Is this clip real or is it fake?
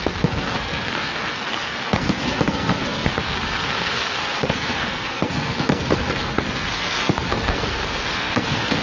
fake